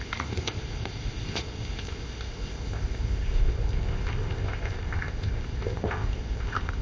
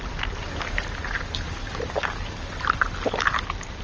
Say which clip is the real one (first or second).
second